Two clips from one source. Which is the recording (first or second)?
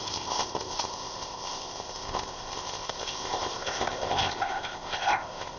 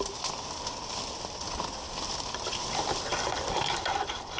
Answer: second